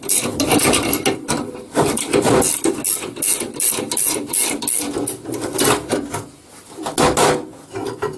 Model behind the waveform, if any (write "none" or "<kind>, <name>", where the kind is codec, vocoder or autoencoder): none